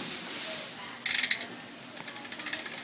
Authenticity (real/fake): real